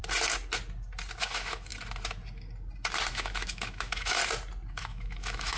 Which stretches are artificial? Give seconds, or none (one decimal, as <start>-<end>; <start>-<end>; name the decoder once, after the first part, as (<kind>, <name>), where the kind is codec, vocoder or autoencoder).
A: 1.2-1.7 (autoencoder, DAC-VAE); 3.1-4.2; 4.7-5.6